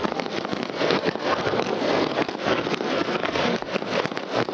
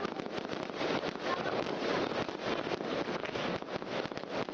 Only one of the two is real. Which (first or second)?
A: second